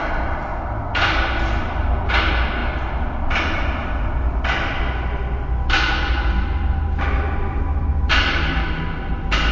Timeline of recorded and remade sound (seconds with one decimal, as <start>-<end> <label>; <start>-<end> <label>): 0.0-9.5 recorded